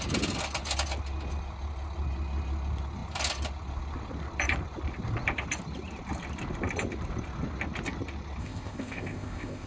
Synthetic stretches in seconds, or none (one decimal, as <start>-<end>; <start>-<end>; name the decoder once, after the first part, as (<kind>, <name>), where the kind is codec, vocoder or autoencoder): 8.4-9.7 (codec, ZipCodec)